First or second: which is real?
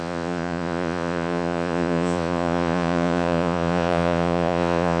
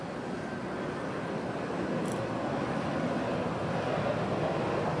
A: second